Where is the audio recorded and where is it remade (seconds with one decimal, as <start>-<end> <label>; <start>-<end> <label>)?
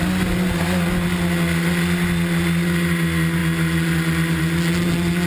0.0-5.3 recorded